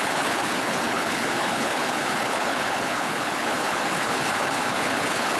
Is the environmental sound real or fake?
fake